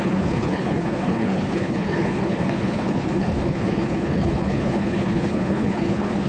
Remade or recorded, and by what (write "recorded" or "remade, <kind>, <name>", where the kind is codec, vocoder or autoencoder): remade, codec, HILCodec